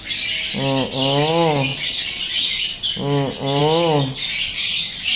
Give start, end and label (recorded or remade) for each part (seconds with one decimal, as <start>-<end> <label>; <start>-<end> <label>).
0.0-1.7 recorded; 1.7-2.5 remade; 2.5-5.2 recorded